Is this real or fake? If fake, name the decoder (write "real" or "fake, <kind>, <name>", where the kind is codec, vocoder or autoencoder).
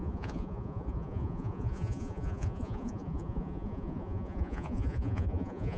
fake, vocoder, Vocos